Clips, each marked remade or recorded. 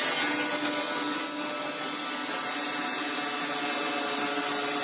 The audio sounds recorded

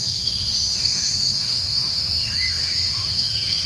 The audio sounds remade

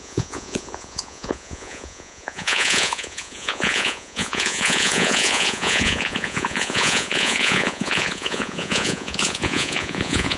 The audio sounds remade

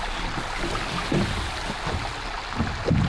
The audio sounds recorded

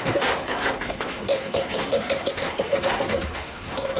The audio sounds remade